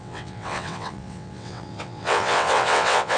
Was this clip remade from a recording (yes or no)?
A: yes